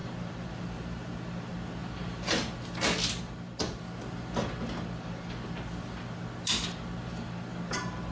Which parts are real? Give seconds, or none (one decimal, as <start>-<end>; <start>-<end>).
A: 0.6-8.1